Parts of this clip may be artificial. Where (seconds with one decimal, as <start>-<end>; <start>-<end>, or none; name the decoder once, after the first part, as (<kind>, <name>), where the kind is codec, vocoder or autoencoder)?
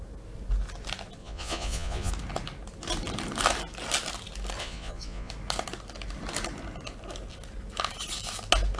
1.2-2.1 (vocoder, Vocos); 4.6-5.3